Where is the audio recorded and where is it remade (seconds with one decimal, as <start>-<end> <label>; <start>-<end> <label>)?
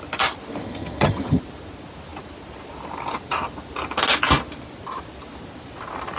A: 0.0-0.5 recorded; 0.5-1.4 remade; 1.4-6.2 recorded